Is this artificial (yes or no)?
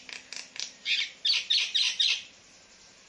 no